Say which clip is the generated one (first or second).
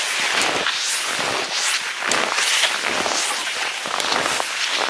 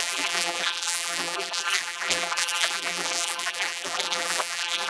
second